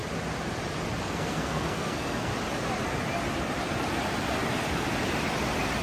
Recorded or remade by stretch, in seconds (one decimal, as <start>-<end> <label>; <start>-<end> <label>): 0.0-1.0 recorded; 1.0-2.3 remade; 2.3-5.8 recorded